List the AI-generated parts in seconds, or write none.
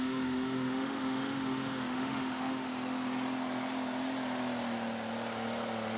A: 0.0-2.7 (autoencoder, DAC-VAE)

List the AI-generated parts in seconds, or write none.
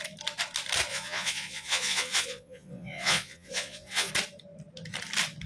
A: 0.9-4.1 (vocoder, Vocos)